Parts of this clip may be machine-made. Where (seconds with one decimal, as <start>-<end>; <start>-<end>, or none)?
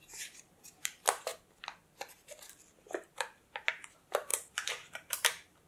0.0-1.3; 3.7-5.7